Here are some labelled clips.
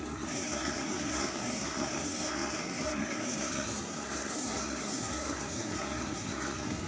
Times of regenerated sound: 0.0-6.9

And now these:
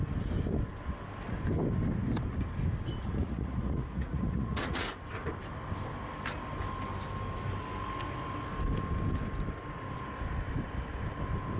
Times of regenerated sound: 3.0-5.1

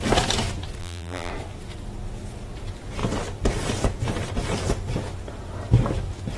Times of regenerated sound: 0.8-1.3

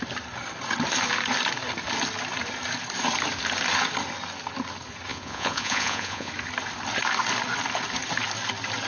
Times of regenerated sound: 5.1-6.3

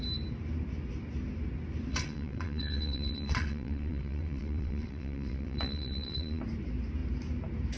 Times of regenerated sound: 1.9-6.4

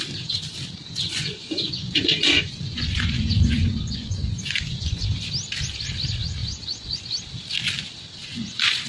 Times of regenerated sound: 0.8-5.0; 6.4-7.0; 8.2-8.9

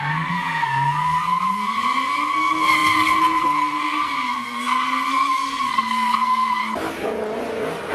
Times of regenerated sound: 0.0-6.6